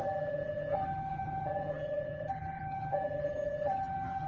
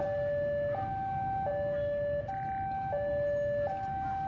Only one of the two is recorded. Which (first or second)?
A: second